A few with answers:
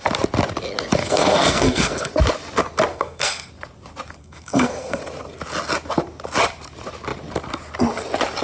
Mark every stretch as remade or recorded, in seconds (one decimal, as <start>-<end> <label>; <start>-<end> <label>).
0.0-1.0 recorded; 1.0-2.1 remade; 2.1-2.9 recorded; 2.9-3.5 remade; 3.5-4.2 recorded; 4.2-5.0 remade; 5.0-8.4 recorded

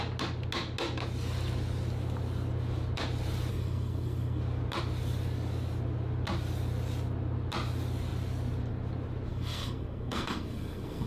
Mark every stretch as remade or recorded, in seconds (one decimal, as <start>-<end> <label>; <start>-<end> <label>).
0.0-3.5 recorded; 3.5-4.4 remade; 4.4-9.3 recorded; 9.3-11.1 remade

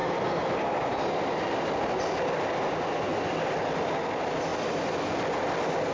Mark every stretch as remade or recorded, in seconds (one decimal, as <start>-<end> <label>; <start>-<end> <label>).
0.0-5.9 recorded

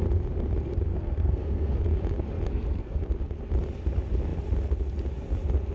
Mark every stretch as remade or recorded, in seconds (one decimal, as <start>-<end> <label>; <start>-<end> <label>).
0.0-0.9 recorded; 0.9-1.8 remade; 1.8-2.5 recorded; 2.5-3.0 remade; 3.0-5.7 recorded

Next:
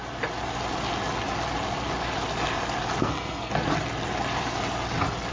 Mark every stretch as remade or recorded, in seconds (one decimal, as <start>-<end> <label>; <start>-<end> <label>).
0.0-3.0 recorded; 3.0-3.5 remade; 3.5-5.3 recorded

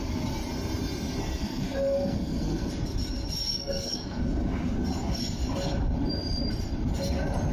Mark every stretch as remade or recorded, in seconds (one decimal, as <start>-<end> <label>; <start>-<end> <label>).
0.0-1.4 recorded; 1.4-2.7 remade; 2.7-3.5 recorded; 3.5-4.2 remade; 4.2-7.5 recorded

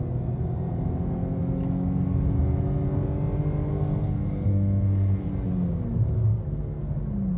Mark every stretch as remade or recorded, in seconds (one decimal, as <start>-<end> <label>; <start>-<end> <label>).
0.0-3.7 recorded; 3.7-5.3 remade; 5.3-6.3 recorded; 6.3-6.9 remade; 6.9-7.4 recorded